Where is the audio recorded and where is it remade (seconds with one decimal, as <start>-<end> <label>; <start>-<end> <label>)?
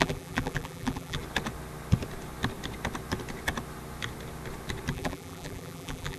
0.0-1.2 remade; 1.2-4.9 recorded; 4.9-6.2 remade